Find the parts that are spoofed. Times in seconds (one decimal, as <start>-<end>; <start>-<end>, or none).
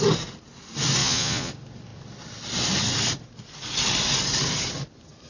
1.0-1.5